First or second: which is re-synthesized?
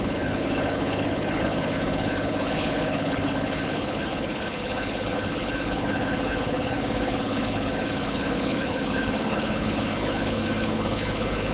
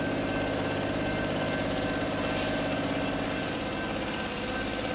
first